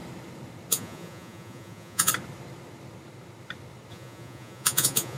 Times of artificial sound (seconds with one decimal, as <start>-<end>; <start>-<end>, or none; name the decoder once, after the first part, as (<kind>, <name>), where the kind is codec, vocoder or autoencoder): 0.7-2.1 (vocoder, Vocos); 3.9-5.2